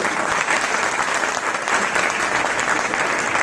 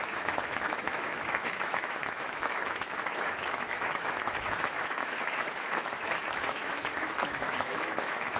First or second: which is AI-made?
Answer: second